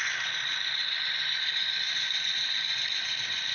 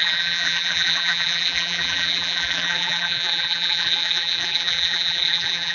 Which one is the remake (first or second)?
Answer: second